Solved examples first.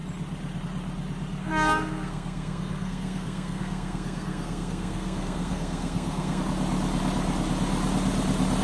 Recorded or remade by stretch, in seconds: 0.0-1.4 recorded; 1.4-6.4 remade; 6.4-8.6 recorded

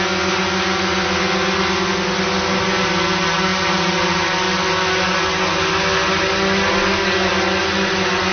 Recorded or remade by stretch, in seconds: 0.0-8.3 recorded

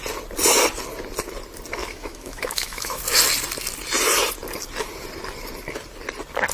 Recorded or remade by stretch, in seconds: 0.0-1.8 recorded; 1.8-3.0 remade; 3.0-6.5 recorded

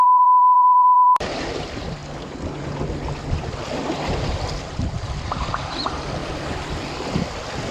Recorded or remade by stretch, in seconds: 0.0-2.0 remade; 2.0-3.2 recorded; 3.2-7.7 remade

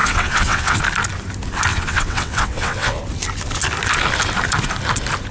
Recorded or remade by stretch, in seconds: 0.0-0.8 remade; 0.8-1.7 recorded; 1.7-3.0 remade; 3.0-5.3 recorded